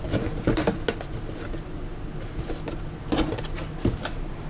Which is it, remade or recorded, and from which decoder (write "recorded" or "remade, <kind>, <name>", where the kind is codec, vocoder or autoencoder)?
recorded